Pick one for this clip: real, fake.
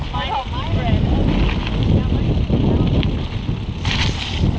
real